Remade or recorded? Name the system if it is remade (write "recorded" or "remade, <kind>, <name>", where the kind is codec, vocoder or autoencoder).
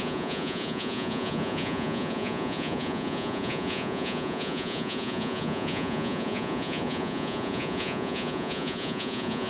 remade, vocoder, Vocos